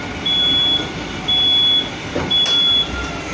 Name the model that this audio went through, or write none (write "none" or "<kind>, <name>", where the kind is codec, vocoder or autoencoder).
none